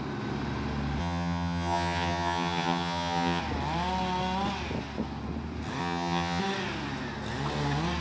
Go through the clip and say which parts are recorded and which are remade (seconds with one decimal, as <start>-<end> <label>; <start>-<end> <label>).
0.0-1.0 recorded; 1.0-3.4 remade; 3.4-5.8 recorded; 5.8-6.4 remade; 6.4-8.0 recorded